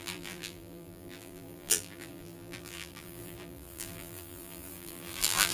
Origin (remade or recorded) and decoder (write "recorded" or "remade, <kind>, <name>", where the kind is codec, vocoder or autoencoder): remade, vocoder, BigVGAN v2